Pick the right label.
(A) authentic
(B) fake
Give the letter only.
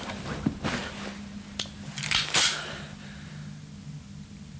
A